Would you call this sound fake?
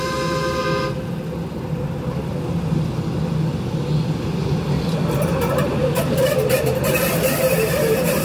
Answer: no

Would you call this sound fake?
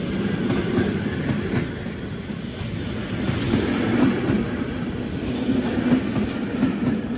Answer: no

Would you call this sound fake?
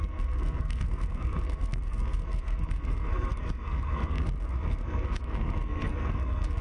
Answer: yes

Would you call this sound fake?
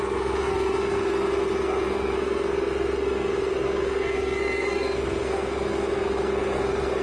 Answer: yes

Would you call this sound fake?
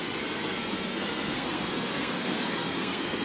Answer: yes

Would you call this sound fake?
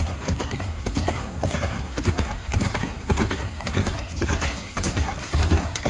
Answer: yes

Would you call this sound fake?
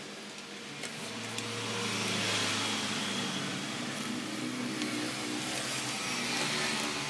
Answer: no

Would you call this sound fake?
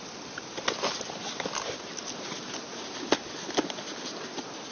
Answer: no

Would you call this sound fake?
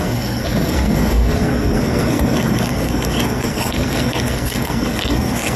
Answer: yes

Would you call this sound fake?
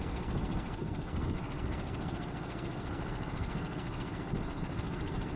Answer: yes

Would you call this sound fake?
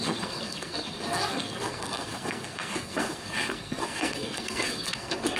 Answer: yes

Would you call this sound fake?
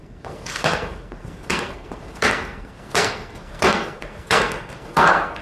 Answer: yes